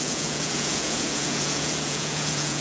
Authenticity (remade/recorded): remade